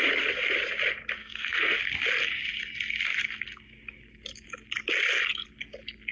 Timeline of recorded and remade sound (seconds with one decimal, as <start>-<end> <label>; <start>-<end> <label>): 0.0-1.2 recorded; 1.2-1.8 remade; 1.8-6.1 recorded